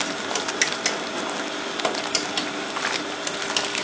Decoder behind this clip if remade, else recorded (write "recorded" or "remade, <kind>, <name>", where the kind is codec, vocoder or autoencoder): recorded